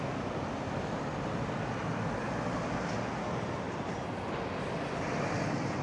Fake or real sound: real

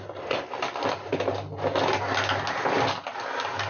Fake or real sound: real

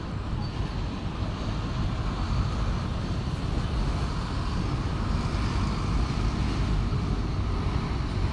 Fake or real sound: real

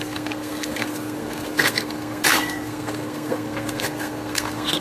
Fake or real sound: fake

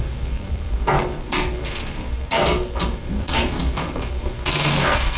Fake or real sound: fake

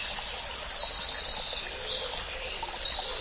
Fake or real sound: real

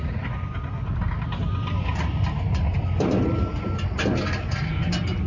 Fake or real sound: real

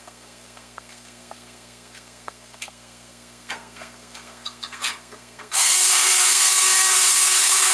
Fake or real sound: fake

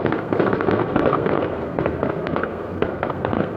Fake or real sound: fake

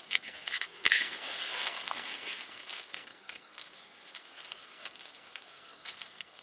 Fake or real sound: fake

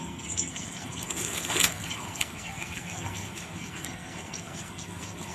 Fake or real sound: fake